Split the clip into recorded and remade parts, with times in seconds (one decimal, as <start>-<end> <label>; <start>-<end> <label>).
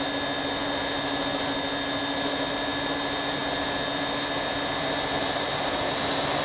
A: 0.0-6.4 recorded